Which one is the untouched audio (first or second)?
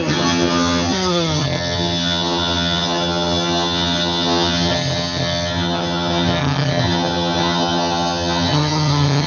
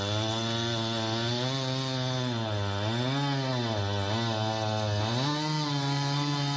second